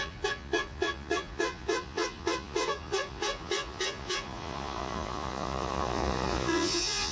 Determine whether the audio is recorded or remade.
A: remade